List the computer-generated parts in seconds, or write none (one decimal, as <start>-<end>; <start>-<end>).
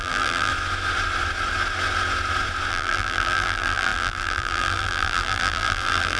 0.0-0.5; 2.7-6.2